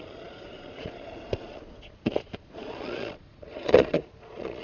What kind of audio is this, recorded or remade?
remade